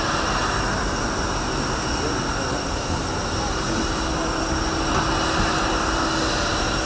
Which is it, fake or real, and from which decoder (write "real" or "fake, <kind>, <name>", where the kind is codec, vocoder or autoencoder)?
real